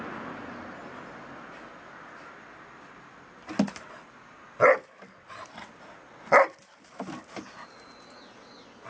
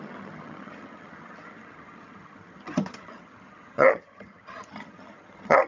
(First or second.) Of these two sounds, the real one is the first